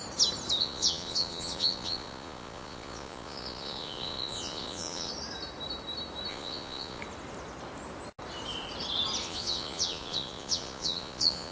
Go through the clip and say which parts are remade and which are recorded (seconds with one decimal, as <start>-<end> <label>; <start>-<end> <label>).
0.0-0.6 recorded; 0.6-5.1 remade; 5.1-6.3 recorded; 6.3-7.0 remade; 7.0-9.2 recorded; 9.2-11.5 remade